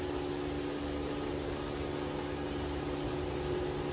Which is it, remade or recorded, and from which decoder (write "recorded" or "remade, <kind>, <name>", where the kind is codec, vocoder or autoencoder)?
recorded